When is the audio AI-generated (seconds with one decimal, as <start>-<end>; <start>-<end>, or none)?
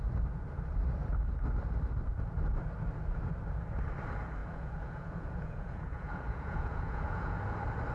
4.4-7.4